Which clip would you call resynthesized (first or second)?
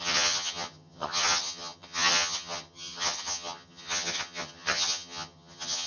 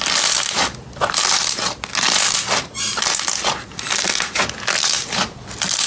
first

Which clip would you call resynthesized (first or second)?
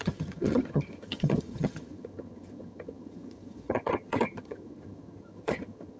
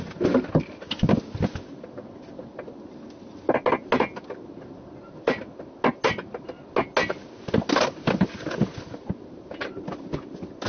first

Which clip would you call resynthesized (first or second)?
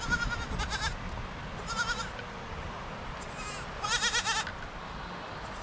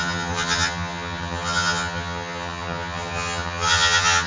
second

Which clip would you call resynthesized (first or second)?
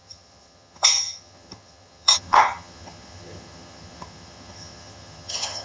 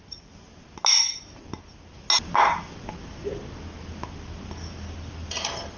first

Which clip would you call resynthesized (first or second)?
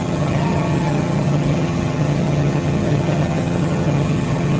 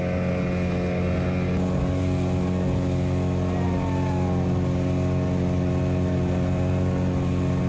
first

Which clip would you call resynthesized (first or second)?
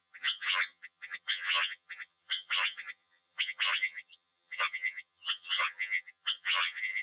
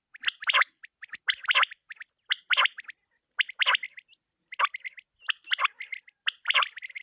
first